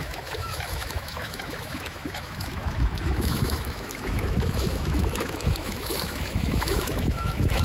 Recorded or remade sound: remade